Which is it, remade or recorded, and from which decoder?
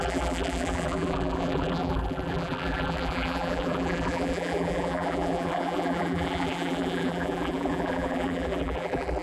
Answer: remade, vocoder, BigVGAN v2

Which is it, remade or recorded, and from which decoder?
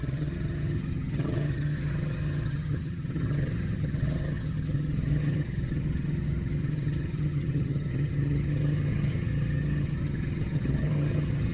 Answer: remade, vocoder, HiFi-GAN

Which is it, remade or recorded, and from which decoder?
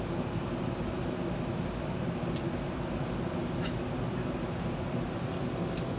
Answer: recorded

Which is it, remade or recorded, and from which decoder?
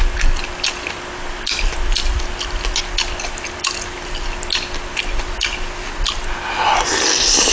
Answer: recorded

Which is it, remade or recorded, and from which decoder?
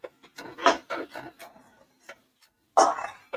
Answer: recorded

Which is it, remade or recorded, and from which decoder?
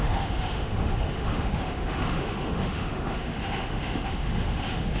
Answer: remade, autoencoder, DAC-VAE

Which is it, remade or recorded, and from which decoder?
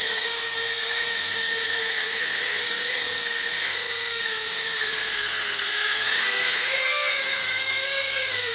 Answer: remade, codec, SNAC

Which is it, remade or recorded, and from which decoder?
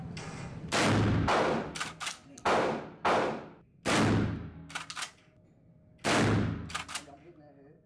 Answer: recorded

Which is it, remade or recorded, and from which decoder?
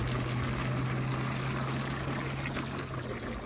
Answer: recorded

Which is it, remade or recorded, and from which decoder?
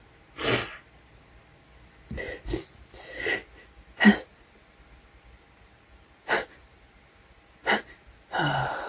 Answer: recorded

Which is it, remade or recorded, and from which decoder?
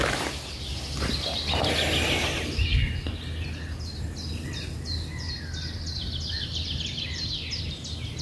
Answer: recorded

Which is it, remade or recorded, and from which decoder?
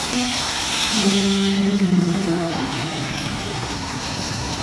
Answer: remade, codec, SNAC